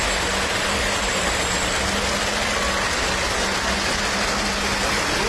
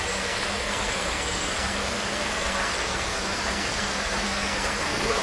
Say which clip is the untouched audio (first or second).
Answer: first